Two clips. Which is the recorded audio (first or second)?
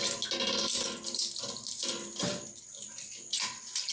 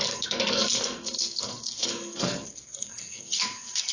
first